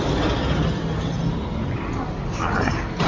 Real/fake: real